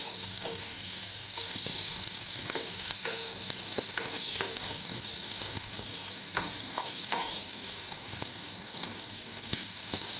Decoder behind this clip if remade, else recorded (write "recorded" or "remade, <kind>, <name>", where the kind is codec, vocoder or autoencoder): remade, codec, DAC